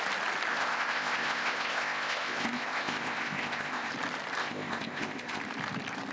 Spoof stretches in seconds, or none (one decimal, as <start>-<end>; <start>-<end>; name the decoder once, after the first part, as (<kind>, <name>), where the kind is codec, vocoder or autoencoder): 0.5-3.9 (codec, ZipCodec); 4.4-5.4